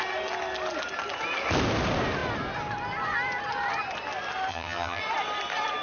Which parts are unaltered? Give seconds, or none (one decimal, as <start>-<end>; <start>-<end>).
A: 0.0-4.5; 5.0-5.8